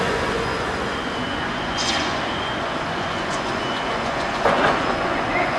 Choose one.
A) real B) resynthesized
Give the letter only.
B